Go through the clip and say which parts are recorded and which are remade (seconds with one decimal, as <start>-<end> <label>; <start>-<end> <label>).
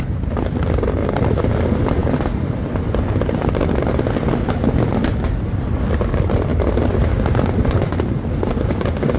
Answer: 0.0-1.0 recorded; 1.0-1.5 remade; 1.5-9.2 recorded